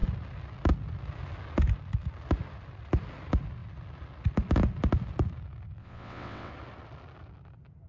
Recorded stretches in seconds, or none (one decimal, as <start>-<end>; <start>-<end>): 0.0-5.8; 6.5-7.9